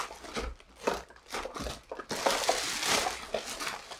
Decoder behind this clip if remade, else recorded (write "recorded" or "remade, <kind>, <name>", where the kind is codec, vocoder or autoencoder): recorded